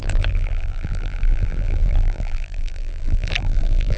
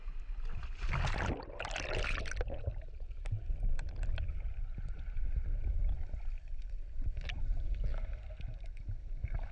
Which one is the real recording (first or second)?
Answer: second